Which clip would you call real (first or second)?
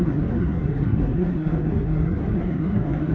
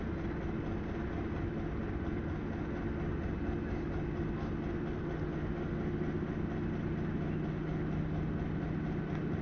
second